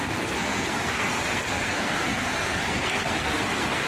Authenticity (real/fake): fake